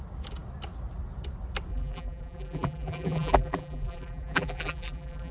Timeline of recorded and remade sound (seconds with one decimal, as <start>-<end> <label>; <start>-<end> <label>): 0.0-1.7 recorded; 1.7-5.3 remade